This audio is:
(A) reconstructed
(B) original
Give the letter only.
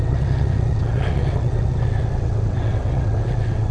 A